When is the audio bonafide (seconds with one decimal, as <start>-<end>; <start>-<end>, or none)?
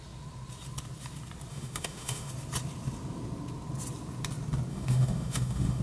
0.0-1.5; 2.3-4.7